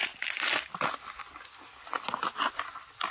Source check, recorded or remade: recorded